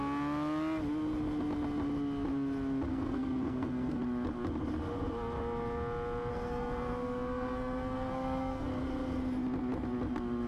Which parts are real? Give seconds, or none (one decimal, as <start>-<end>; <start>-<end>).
0.0-2.9; 4.0-6.3; 8.7-10.5